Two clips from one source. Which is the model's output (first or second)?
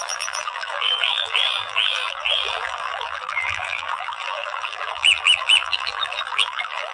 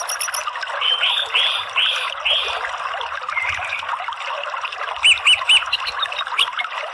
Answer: first